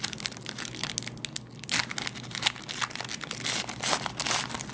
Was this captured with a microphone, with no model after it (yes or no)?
yes